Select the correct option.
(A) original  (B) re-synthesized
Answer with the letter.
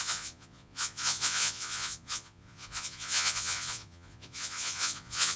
B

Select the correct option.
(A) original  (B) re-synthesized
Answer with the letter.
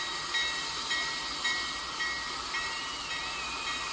A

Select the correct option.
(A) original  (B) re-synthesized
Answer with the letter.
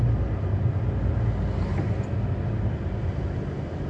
A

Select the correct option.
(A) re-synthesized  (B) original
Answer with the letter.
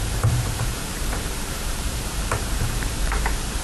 A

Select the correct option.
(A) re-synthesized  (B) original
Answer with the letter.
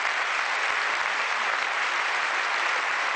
B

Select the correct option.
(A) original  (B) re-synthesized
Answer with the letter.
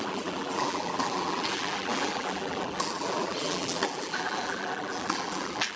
B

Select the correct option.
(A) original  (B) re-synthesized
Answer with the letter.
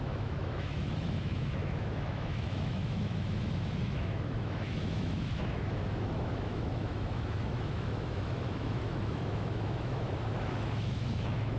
B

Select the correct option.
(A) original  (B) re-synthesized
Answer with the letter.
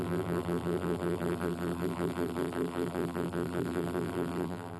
B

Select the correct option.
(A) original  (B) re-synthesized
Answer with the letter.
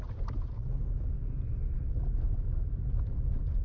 A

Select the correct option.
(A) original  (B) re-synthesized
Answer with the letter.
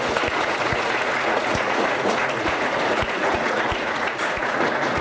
B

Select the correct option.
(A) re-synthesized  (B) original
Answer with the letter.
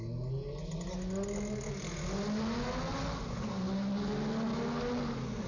B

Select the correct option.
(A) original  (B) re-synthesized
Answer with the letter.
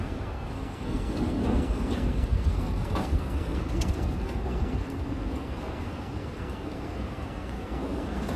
B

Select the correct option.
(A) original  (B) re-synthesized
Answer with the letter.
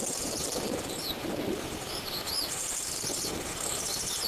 A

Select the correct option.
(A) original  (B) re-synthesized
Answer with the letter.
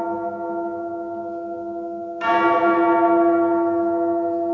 A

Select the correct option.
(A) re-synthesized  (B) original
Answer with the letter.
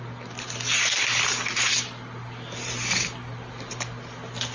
B